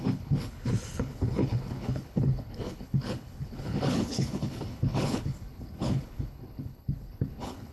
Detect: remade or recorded remade